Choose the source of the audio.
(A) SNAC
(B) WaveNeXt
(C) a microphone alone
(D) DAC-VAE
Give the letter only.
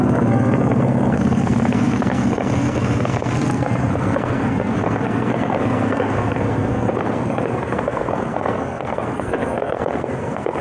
A